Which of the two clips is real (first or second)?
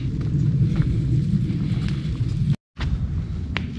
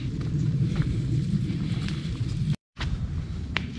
first